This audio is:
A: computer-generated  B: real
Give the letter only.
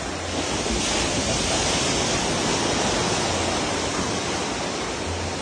B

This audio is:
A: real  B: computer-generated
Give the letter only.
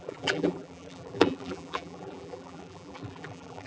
B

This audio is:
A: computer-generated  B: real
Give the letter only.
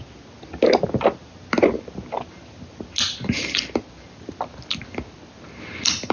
B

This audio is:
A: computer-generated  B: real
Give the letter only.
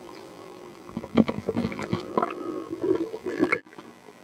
A